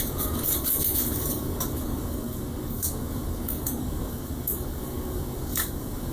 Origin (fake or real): fake